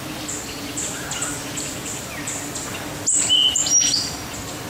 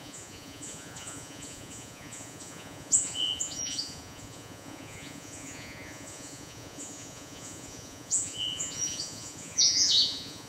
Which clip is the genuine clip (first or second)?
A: first